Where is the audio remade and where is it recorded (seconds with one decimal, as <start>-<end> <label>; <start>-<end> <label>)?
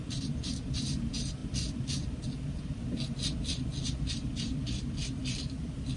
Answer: 0.0-5.2 recorded; 5.2-6.0 remade